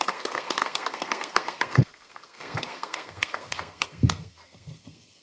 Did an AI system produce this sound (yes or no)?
yes